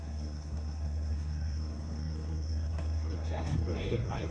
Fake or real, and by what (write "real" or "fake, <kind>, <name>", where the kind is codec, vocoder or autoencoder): fake, codec, SNAC